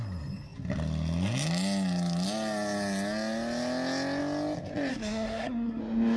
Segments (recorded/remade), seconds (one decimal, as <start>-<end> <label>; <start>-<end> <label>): 0.0-4.9 recorded; 4.9-5.8 remade; 5.8-6.2 recorded